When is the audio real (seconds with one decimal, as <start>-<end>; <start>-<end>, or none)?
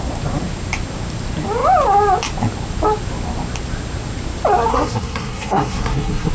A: 0.0-4.7